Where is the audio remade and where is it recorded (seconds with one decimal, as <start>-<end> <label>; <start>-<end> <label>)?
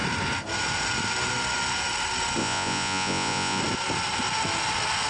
0.0-2.4 recorded; 2.4-3.6 remade; 3.6-5.1 recorded